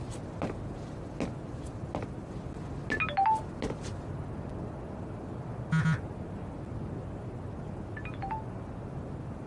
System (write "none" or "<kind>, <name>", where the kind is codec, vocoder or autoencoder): none